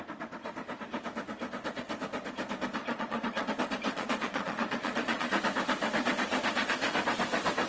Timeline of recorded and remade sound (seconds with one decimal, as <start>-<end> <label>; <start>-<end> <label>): 0.0-2.8 recorded; 2.8-3.5 remade; 3.5-3.9 recorded; 3.9-5.3 remade; 5.3-7.7 recorded